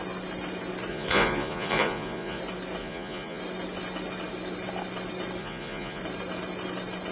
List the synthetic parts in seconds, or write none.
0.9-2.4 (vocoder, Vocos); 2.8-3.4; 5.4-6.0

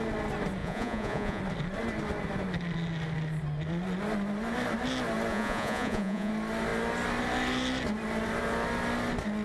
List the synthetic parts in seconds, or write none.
0.6-1.4 (vocoder, Vocos); 5.3-6.3

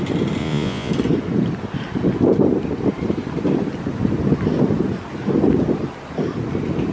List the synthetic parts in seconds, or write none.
0.4-0.9 (vocoder, Vocos)

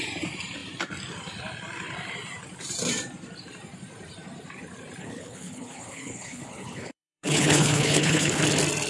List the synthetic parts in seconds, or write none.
5.0-8.4 (codec, HILCodec)

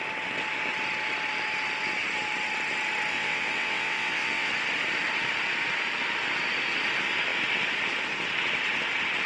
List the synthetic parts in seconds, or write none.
3.1-4.5 (vocoder, WaveNeXt)